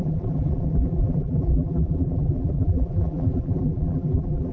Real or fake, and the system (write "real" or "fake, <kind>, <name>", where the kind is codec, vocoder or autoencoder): fake, vocoder, BigVGAN v2